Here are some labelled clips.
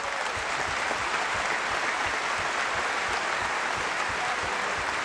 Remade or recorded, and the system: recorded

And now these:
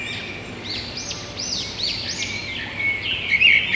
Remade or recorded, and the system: recorded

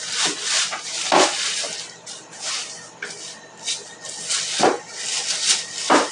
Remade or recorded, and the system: recorded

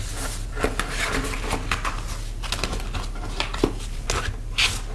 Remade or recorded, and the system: recorded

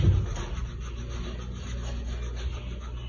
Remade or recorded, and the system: recorded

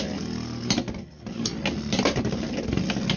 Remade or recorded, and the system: recorded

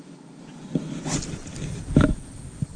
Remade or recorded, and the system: recorded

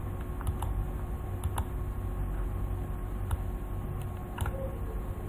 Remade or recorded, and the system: recorded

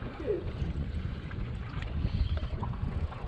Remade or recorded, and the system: remade, vocoder, Vocos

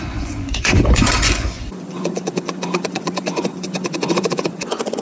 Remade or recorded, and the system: remade, vocoder, Vocos